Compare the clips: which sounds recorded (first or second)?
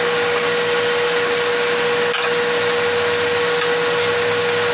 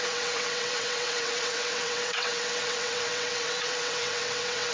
first